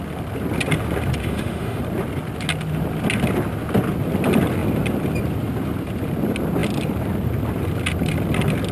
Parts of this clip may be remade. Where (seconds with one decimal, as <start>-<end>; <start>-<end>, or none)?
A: 1.2-1.8